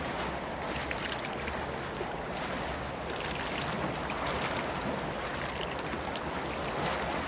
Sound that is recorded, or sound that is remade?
recorded